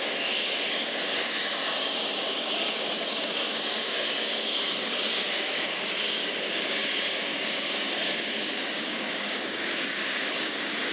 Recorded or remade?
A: remade